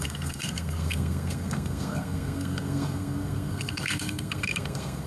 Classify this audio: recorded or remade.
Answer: remade